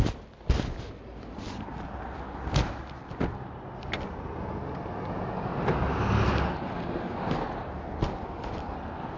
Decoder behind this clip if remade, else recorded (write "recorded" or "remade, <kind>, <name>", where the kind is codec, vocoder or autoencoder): recorded